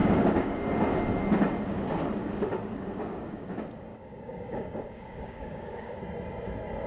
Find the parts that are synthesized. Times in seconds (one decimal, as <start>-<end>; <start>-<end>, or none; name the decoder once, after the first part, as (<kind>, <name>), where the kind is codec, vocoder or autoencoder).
0.0-0.6 (codec, DAC); 2.2-3.5; 3.9-6.0